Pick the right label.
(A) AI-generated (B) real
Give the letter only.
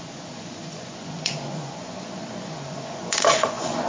A